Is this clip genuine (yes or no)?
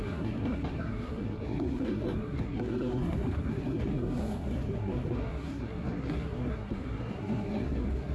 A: no